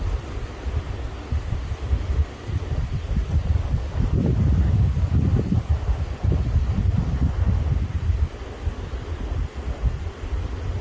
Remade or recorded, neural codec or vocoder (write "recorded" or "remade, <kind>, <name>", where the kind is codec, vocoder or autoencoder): recorded